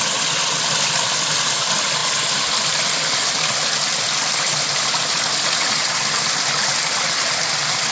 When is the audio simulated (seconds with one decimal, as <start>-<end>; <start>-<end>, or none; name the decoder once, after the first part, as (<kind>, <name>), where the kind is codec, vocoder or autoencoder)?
none